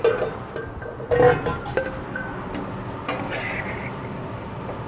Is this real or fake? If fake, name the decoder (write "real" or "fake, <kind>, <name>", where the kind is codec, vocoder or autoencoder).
real